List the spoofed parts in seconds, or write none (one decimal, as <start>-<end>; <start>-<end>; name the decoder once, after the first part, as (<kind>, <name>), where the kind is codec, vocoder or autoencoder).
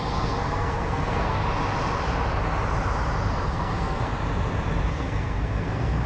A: 0.0-1.4 (codec, SNAC); 3.3-4.1; 4.9-6.1